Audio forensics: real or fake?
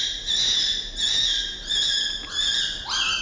real